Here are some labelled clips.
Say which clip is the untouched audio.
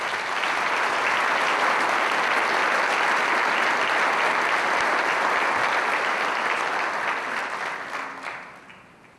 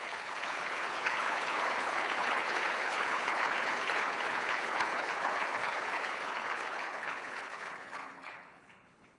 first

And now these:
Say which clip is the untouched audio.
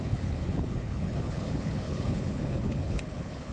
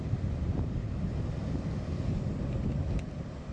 second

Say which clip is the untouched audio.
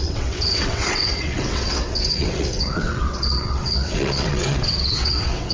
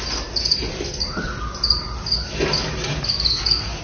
second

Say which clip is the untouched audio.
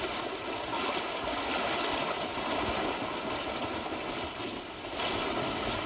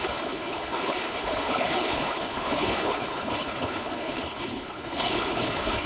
first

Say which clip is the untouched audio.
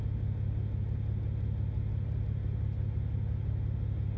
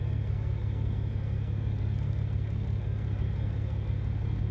first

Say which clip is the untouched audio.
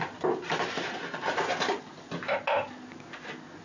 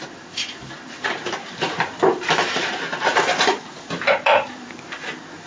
first